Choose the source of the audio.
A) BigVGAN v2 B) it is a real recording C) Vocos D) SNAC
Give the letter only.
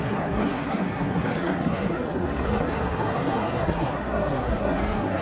D